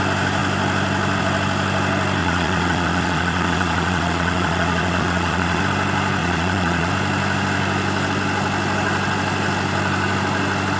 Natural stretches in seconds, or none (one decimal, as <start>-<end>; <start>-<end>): 0.0-2.2; 5.6-6.2; 6.9-10.8